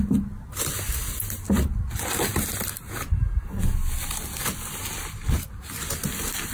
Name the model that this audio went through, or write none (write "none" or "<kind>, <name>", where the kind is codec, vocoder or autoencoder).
none